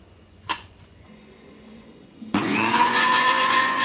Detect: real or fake fake